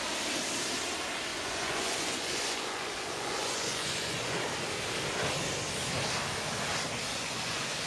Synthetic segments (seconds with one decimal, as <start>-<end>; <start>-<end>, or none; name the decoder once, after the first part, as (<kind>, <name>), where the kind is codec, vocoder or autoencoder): 1.3-4.4 (vocoder, Vocos); 7.1-7.9